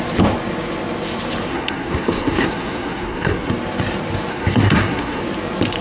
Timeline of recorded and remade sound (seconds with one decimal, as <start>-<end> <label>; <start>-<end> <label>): 0.0-1.5 recorded; 1.5-3.5 remade; 3.5-4.3 recorded; 4.3-5.2 remade; 5.2-5.8 recorded